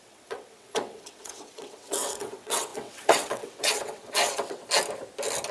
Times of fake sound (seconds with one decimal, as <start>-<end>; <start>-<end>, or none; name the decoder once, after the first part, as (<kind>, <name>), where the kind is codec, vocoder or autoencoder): 0.0-4.6 (vocoder, WaveNeXt)